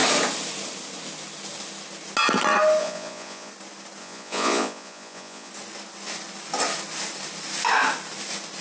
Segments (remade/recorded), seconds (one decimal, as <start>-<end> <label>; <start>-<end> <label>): 0.0-2.8 recorded; 2.8-3.5 remade; 3.5-4.0 recorded; 4.0-5.5 remade; 5.5-8.6 recorded